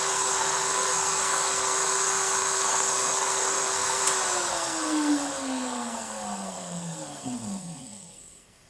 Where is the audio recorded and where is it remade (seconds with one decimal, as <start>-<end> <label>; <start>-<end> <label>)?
0.0-4.0 remade; 4.0-4.5 recorded; 4.5-8.7 remade